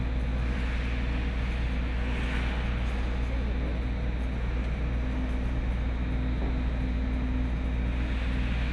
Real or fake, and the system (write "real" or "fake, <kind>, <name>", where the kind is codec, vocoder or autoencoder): real